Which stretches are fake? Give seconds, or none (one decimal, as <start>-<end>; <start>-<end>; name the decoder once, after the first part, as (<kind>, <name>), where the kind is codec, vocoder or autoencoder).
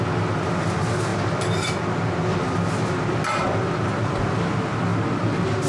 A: none